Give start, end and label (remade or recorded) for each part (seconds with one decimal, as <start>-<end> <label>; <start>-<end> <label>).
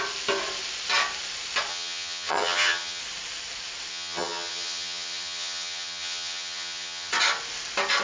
0.0-1.7 recorded; 1.7-3.0 remade; 3.0-3.9 recorded; 3.9-7.1 remade; 7.1-8.0 recorded